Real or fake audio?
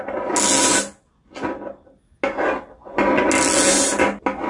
real